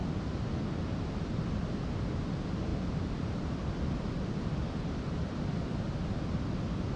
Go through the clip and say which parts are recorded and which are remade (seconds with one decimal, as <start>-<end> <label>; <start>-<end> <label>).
0.0-2.7 recorded; 2.7-6.0 remade; 6.0-7.0 recorded